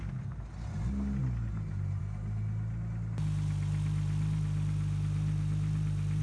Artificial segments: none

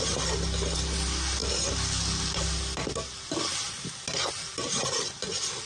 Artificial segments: none

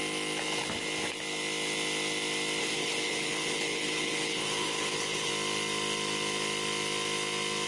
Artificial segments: 2.6-5.3 (codec, HILCodec)

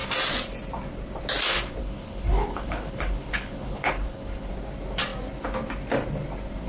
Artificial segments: 1.8-4.5 (codec, HILCodec)

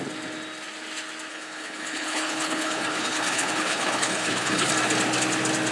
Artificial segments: 1.3-4.7 (codec, HILCodec)

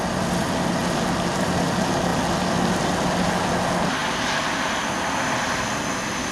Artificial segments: none